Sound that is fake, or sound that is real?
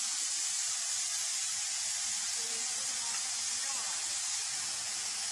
real